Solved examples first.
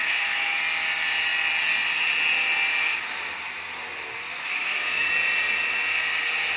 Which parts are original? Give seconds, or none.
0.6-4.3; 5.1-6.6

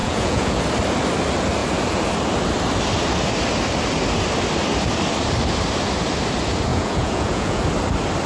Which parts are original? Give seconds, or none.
0.6-6.7; 7.6-8.3

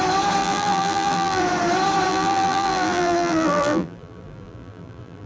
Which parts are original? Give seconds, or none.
0.0-0.4; 1.4-2.1

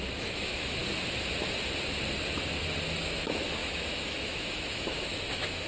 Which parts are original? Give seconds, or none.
0.8-3.0

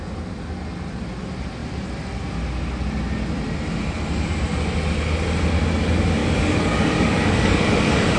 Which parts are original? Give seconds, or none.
0.0-6.2

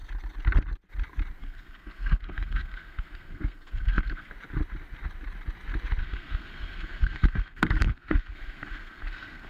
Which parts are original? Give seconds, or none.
0.0-1.4; 4.3-6.0

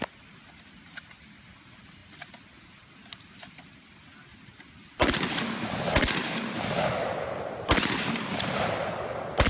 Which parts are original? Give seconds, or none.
0.0-9.5

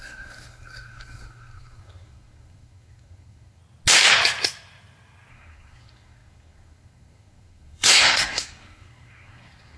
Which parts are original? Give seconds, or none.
3.6-5.3